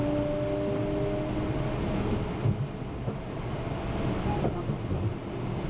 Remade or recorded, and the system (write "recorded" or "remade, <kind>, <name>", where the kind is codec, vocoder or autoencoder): recorded